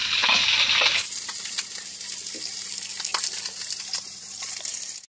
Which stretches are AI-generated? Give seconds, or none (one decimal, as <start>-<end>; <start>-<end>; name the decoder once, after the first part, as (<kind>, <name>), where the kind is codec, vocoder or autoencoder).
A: none

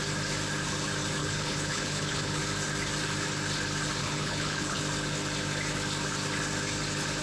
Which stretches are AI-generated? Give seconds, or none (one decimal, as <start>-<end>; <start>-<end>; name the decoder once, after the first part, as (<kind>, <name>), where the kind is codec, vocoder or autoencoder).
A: 1.2-2.4 (codec, HILCodec); 4.0-4.8

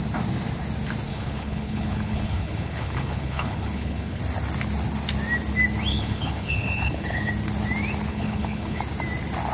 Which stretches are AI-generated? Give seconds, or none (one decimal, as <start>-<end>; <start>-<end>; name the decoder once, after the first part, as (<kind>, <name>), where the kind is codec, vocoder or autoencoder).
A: 1.1-4.2 (codec, HILCodec); 5.9-7.3; 8.1-8.8

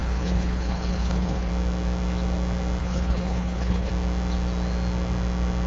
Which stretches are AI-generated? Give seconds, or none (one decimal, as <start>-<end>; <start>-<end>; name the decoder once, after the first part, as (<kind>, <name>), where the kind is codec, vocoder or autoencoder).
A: 0.0-1.5 (codec, HILCodec); 2.8-3.9

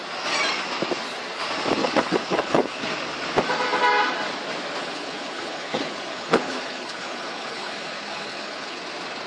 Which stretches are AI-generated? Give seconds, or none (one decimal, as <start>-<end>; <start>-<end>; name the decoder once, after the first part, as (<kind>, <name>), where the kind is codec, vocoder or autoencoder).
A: 1.8-2.9 (codec, HILCodec); 4.8-8.8

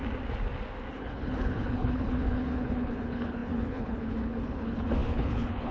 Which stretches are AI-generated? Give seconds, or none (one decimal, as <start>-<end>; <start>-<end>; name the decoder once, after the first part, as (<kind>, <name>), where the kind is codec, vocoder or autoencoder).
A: 0.9-5.7 (codec, HILCodec)